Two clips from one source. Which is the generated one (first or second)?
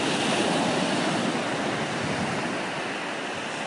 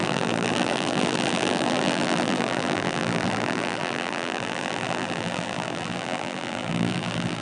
second